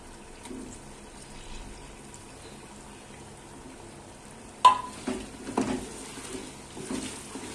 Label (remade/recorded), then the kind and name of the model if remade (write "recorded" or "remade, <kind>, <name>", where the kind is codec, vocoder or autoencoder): recorded